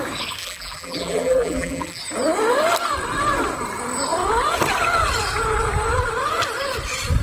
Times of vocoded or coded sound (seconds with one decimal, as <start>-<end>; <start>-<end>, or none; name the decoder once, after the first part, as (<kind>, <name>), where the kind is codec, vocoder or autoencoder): 0.4-2.0 (vocoder, BigVGAN v2)